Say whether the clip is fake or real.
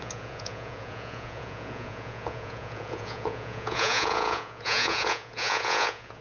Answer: fake